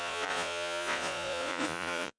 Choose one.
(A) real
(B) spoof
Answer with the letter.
B